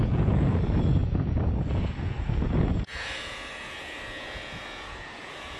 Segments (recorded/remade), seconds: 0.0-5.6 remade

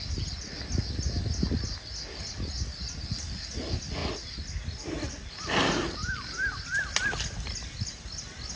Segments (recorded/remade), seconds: 0.0-8.6 recorded

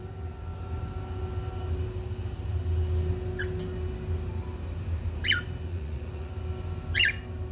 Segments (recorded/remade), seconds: 0.0-5.7 recorded; 5.7-6.3 remade; 6.3-7.5 recorded